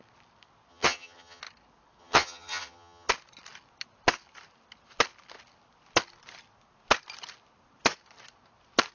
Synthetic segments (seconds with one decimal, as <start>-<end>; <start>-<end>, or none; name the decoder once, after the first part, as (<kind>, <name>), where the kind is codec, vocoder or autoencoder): 0.7-1.4 (vocoder, HiFi-GAN); 2.0-3.1